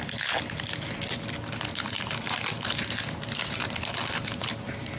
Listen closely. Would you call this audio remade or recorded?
recorded